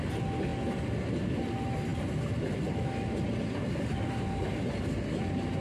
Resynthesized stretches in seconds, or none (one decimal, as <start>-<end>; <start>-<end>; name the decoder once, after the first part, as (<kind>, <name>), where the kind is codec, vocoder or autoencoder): none